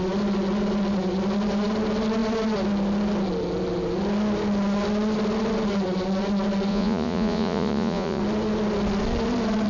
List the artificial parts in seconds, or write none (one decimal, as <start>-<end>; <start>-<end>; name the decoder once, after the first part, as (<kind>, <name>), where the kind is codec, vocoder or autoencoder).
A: 6.7-8.2 (vocoder, Vocos)